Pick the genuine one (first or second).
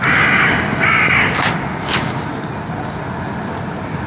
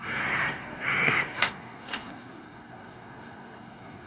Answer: first